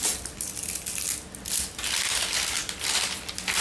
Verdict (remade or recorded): recorded